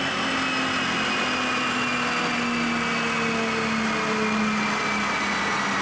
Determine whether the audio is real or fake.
real